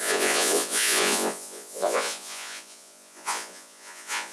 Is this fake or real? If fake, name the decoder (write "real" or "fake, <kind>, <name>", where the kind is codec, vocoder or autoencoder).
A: fake, vocoder, Vocos